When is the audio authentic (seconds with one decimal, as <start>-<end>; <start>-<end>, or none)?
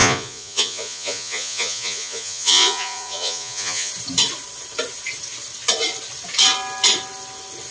3.9-7.7